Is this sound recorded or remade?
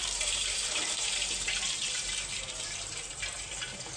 remade